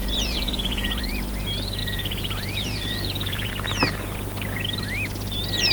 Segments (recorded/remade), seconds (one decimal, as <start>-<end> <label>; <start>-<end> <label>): 0.0-1.2 remade; 1.2-1.8 recorded; 1.8-3.5 remade; 3.5-5.7 recorded

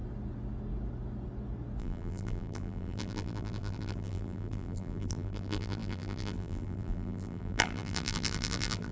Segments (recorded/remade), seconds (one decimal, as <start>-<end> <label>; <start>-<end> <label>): 0.0-1.8 recorded; 1.8-8.9 remade

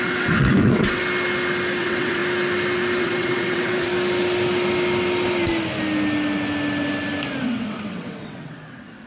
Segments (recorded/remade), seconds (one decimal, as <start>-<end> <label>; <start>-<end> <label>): 0.0-1.0 remade; 1.0-1.8 recorded; 1.8-2.2 remade; 2.2-3.0 recorded; 3.0-3.9 remade; 3.9-7.4 recorded; 7.4-9.1 remade

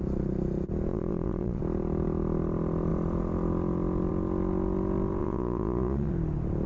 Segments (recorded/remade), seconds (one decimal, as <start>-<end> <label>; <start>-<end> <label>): 0.0-0.9 recorded; 0.9-1.6 remade; 1.6-5.2 recorded; 5.2-6.1 remade; 6.1-6.7 recorded

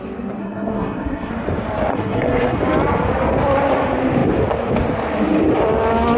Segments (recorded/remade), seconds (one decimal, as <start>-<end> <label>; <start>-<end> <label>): 0.0-0.4 recorded; 0.4-1.3 remade; 1.3-1.9 recorded; 1.9-2.6 remade; 2.6-6.2 recorded

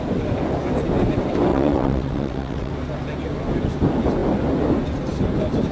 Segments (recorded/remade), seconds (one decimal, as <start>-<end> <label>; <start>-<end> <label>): 0.0-1.5 recorded; 1.5-2.7 remade; 2.7-5.7 recorded

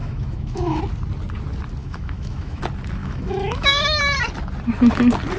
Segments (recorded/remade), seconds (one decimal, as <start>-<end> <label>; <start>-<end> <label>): 0.0-0.8 remade; 0.8-1.8 recorded; 1.8-2.6 remade; 2.6-3.0 recorded; 3.0-4.0 remade; 4.0-5.4 recorded